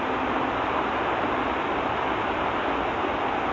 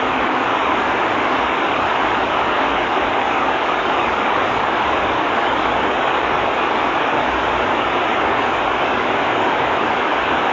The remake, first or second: second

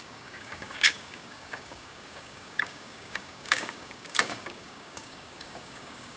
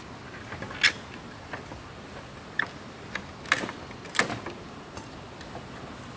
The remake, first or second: first